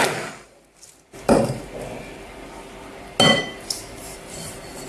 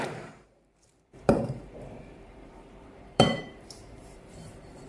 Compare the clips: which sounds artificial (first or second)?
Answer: second